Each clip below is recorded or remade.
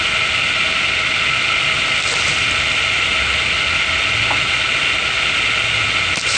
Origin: recorded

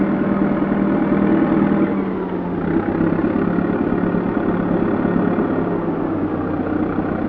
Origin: recorded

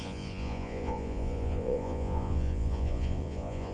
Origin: remade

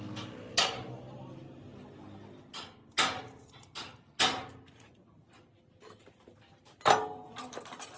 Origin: recorded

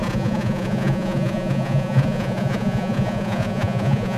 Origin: remade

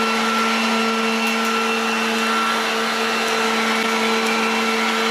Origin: recorded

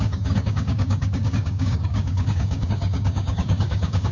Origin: remade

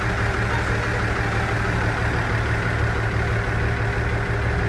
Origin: recorded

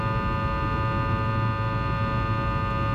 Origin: recorded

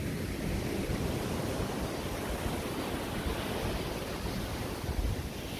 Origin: recorded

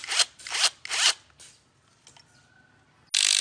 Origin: recorded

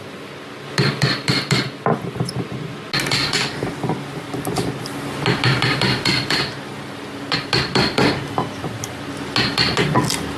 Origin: recorded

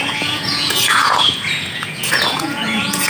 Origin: remade